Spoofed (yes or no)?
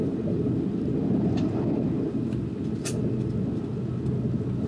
no